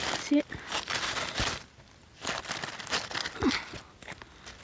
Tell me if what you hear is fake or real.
real